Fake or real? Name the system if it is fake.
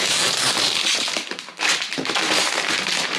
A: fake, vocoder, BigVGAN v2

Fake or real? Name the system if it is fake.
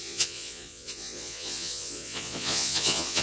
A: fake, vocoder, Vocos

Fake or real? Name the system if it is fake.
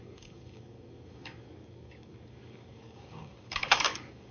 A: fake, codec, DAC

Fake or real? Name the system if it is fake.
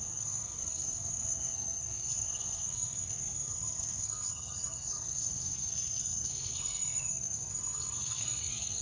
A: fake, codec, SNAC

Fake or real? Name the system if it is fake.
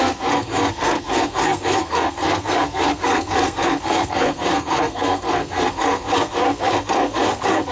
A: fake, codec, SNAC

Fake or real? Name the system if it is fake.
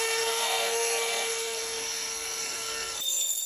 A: fake, codec, SNAC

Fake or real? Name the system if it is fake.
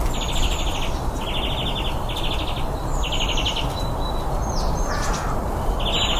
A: real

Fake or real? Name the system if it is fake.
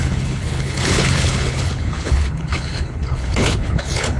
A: fake, codec, HILCodec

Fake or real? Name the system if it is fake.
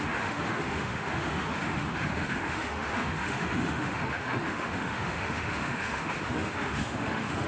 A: fake, autoencoder, DAC-VAE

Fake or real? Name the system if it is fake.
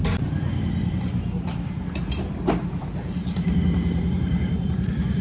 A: real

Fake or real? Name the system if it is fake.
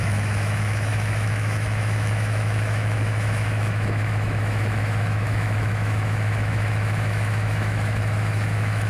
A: fake, autoencoder, DAC-VAE